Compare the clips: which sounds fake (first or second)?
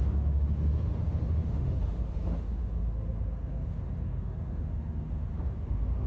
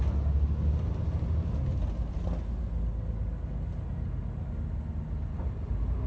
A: first